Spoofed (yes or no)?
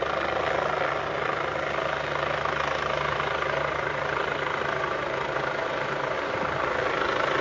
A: no